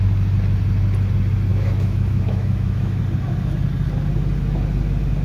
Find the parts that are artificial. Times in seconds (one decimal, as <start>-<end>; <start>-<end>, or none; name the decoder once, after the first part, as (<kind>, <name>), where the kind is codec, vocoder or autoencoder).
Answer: 1.5-3.0 (autoencoder, DAC-VAE)